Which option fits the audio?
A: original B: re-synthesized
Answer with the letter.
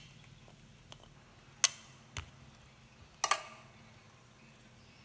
A